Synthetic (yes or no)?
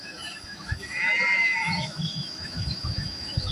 yes